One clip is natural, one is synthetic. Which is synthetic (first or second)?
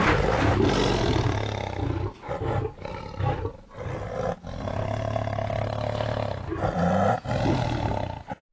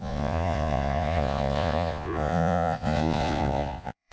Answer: second